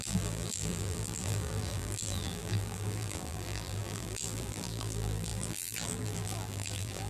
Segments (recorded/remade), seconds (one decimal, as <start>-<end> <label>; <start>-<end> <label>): 0.0-7.1 remade